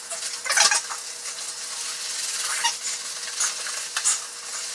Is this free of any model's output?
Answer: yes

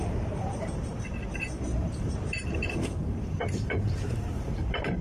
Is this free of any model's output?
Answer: no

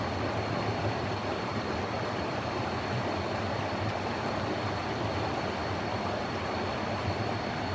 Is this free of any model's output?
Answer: yes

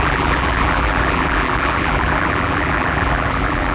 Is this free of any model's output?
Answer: no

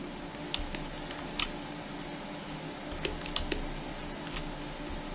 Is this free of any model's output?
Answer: yes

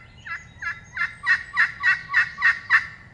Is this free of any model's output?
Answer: yes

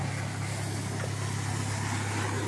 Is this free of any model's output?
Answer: yes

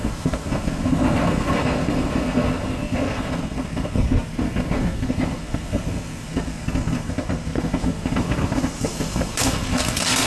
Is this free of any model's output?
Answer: no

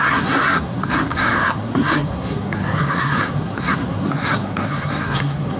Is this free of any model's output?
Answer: no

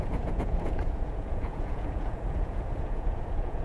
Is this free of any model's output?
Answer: no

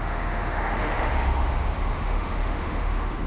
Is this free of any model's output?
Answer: no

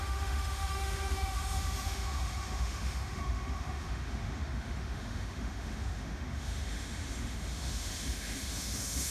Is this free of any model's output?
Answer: no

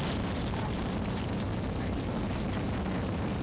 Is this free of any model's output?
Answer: no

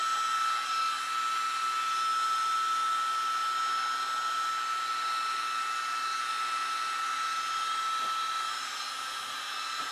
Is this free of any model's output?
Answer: yes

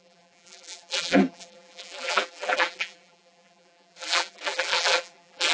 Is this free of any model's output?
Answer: no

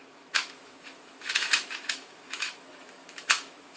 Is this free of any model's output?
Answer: no